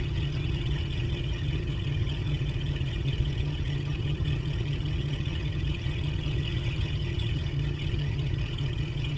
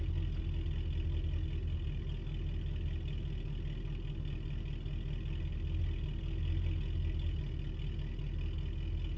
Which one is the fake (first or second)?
first